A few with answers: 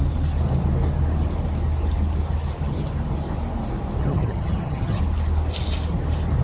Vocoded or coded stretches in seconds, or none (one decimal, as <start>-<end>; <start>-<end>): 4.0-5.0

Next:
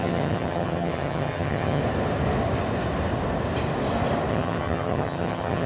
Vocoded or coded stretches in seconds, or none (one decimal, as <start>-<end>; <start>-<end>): 0.0-1.8; 4.3-5.7

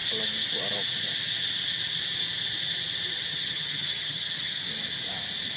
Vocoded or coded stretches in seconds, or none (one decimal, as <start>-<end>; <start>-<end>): 3.3-4.6